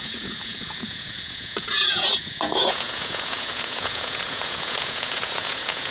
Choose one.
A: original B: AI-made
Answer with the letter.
B